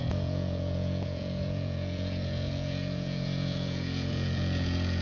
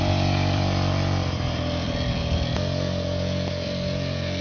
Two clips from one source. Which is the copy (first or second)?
first